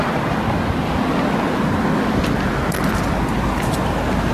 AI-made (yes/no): no